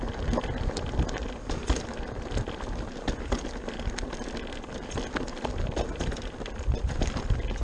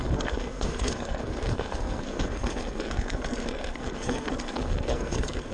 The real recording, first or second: first